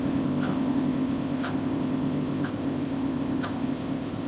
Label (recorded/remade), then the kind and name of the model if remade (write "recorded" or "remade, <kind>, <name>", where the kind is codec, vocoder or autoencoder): remade, codec, ZipCodec